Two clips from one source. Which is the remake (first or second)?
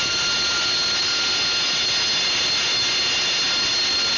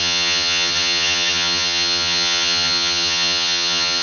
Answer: second